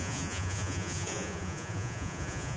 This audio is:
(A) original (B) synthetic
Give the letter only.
B